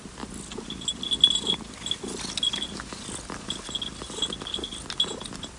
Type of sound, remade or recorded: recorded